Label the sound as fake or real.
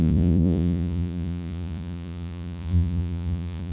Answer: fake